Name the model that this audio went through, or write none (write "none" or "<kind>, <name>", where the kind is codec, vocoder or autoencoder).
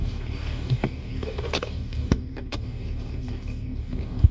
codec, DAC